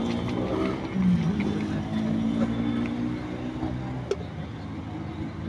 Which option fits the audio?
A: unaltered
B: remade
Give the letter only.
A